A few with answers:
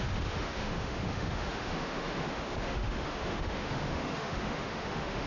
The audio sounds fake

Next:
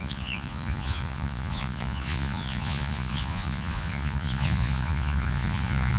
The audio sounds fake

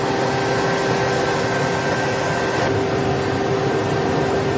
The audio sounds real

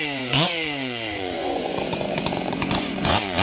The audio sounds fake